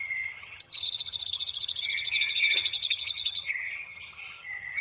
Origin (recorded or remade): remade